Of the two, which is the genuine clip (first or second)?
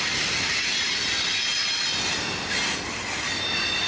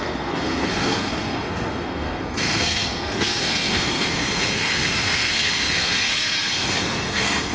first